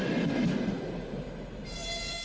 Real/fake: real